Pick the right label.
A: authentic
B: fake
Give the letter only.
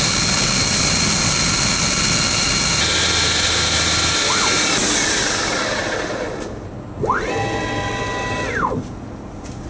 A